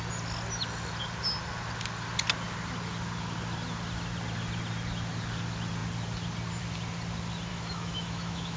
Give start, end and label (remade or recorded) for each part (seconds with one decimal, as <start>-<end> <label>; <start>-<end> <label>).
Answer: 0.0-7.5 recorded; 7.5-8.6 remade

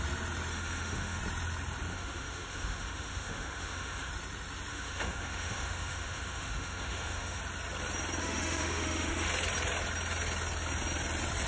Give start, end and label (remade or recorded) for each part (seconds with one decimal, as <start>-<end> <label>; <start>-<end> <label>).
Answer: 0.0-0.5 recorded; 0.5-1.2 remade; 1.2-1.9 recorded; 1.9-4.1 remade; 4.1-4.7 recorded; 4.7-7.4 remade; 7.4-8.2 recorded; 8.2-9.3 remade; 9.3-11.5 recorded

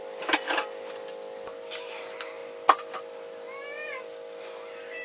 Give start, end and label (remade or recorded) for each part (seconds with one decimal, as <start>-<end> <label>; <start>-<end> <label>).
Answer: 0.0-5.0 recorded

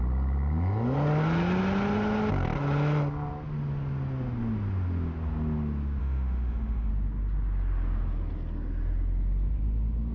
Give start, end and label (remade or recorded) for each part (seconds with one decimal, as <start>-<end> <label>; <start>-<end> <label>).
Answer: 0.0-6.0 recorded; 6.0-6.9 remade; 6.9-10.1 recorded

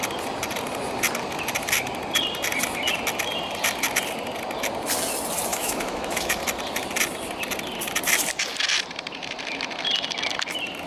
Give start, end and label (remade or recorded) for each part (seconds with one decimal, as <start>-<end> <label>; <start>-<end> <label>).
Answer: 0.0-5.5 recorded; 5.5-6.4 remade; 6.4-10.9 recorded